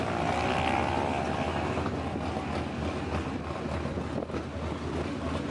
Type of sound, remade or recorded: recorded